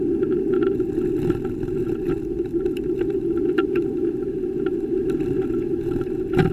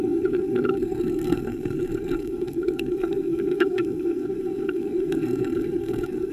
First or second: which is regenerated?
second